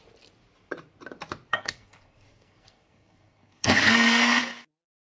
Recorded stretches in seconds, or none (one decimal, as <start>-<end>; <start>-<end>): 0.0-1.5; 4.4-5.1